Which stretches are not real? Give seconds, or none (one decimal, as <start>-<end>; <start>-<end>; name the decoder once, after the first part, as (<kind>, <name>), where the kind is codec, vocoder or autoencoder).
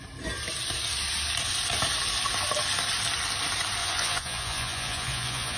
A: 3.8-5.6 (vocoder, Vocos)